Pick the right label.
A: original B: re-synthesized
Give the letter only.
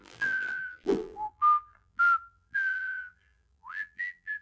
B